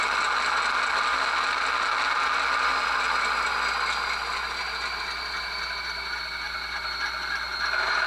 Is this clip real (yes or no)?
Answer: yes